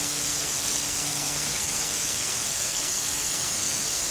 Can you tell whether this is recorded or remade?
remade